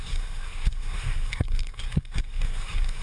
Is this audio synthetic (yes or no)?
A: yes